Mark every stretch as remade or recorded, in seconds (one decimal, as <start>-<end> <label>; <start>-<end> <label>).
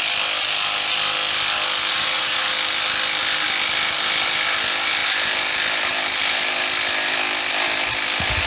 0.0-1.9 recorded; 1.9-2.5 remade; 2.5-8.5 recorded